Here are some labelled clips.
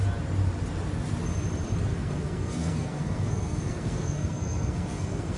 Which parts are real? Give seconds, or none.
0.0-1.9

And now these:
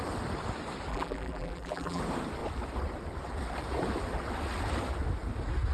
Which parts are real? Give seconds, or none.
0.0-0.9; 2.0-5.7

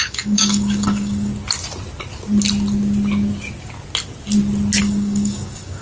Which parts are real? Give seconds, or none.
1.3-4.8

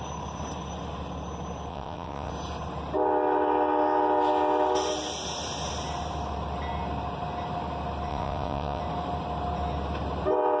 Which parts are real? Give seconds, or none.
0.0-1.7; 2.3-8.1; 8.8-10.6